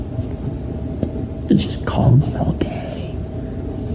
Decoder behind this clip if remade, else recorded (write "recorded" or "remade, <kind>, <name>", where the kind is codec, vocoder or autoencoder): recorded